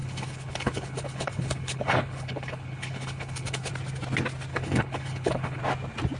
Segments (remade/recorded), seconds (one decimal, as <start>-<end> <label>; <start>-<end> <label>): 0.0-3.7 remade; 3.7-4.5 recorded; 4.5-5.6 remade; 5.6-6.2 recorded